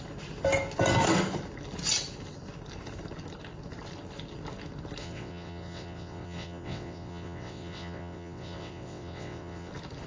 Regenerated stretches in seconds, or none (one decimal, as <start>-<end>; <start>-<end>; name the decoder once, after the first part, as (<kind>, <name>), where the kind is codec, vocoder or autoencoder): 5.0-9.7 (vocoder, WaveNeXt)